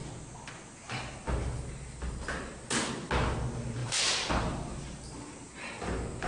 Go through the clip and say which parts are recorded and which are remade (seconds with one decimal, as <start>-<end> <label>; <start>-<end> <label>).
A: 0.0-3.8 recorded; 3.8-5.5 remade; 5.5-6.3 recorded